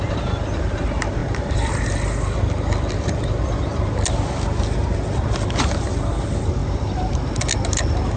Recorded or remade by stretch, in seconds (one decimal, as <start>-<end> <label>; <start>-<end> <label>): 0.0-8.2 recorded